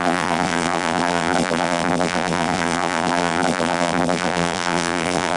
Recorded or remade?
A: remade